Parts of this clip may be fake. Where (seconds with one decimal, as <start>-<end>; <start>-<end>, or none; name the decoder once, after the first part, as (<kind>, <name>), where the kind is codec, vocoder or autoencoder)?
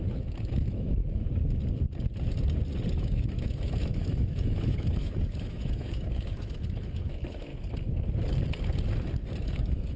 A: 0.0-1.0 (autoencoder, DAC-VAE); 3.0-7.5; 9.4-10.0